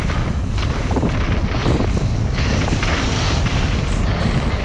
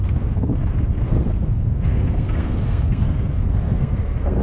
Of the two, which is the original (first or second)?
first